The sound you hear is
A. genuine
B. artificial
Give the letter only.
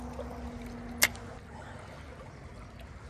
A